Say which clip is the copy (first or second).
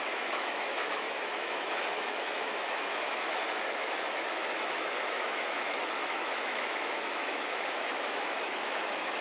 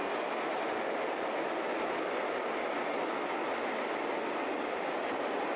first